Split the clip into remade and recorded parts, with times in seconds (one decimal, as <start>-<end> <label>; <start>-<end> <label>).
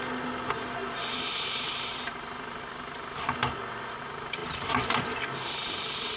0.0-0.8 recorded; 0.8-4.0 remade; 4.0-4.4 recorded; 4.4-5.2 remade; 5.2-6.2 recorded